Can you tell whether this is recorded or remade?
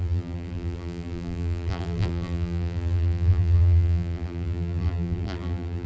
remade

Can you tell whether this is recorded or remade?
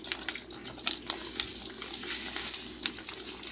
recorded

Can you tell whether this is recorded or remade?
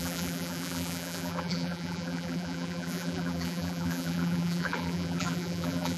remade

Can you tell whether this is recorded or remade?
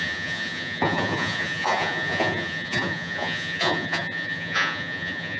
remade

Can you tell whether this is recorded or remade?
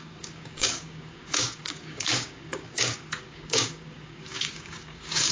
remade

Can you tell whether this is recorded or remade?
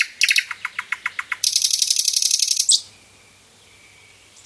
recorded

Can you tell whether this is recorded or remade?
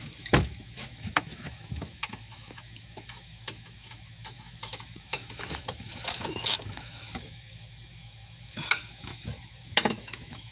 remade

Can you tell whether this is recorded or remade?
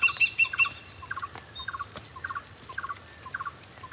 recorded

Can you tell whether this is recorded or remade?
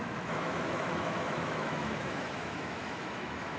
remade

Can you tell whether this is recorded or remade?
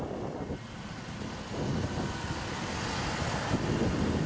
recorded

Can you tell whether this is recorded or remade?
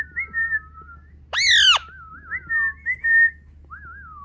recorded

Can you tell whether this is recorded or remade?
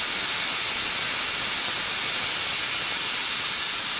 recorded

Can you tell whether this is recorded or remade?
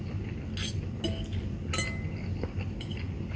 recorded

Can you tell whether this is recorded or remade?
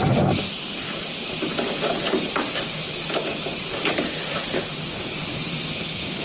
recorded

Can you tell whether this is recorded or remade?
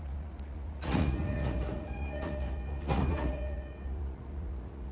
remade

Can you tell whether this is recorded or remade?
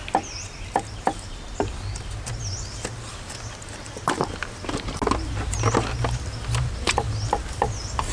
recorded